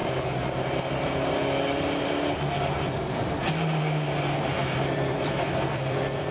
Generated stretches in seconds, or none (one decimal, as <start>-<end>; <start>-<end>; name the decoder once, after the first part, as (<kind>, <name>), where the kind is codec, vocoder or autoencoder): 4.6-6.3 (vocoder, BigVGAN v2)